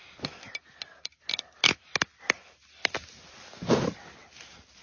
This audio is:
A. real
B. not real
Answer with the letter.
A